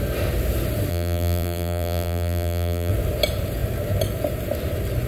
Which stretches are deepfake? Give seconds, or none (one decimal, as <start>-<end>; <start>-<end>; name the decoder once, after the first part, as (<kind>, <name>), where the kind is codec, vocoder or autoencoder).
0.9-2.9 (vocoder, BigVGAN v2)